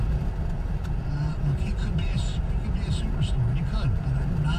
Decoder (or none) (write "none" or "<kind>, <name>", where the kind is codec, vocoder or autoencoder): none